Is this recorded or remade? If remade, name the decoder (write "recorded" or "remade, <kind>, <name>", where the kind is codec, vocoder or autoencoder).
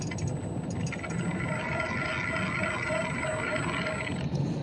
recorded